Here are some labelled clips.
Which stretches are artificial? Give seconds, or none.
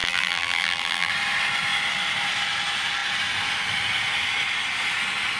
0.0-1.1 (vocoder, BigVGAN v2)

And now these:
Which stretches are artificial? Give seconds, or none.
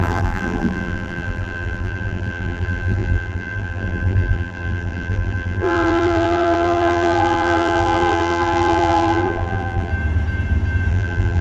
0.0-9.9 (vocoder, BigVGAN v2); 10.9-11.4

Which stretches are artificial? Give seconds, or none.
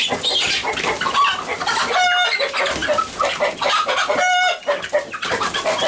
0.6-1.8 (vocoder, BigVGAN v2); 2.8-4.2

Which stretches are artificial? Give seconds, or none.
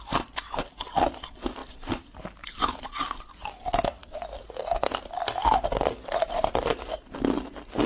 1.6-2.8 (vocoder, BigVGAN v2)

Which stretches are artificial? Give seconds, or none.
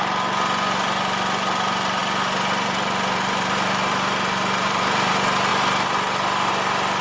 2.0-5.1 (vocoder, BigVGAN v2)